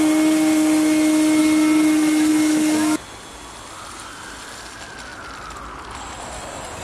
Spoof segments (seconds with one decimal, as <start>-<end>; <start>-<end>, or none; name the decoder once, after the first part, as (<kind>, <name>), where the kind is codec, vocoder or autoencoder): none